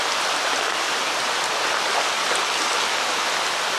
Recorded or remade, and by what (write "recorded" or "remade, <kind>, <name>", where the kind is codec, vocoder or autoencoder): recorded